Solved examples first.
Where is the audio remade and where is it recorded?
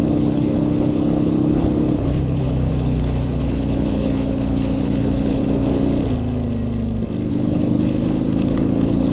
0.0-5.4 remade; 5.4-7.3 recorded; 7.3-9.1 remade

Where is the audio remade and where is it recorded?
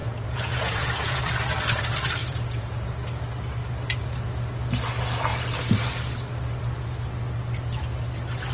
0.0-1.2 remade; 1.2-2.2 recorded; 2.2-2.9 remade; 2.9-8.5 recorded